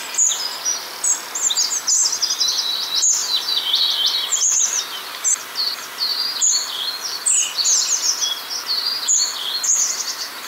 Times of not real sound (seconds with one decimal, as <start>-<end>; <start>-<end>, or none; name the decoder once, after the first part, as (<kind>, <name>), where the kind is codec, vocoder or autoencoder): 4.3-4.8 (vocoder, BigVGAN v2)